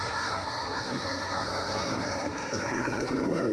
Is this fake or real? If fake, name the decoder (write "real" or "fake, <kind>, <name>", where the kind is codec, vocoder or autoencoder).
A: fake, codec, SNAC